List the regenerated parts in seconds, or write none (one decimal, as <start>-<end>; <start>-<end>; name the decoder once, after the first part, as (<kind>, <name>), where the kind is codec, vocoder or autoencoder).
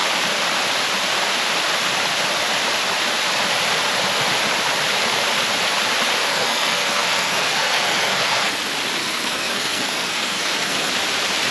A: 6.3-8.5 (codec, SNAC); 9.0-10.9